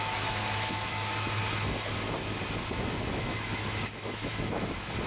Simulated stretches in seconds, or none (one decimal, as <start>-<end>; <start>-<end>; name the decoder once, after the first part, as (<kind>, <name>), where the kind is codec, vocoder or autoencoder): 0.0-1.4 (autoencoder, DAC-VAE); 3.0-5.1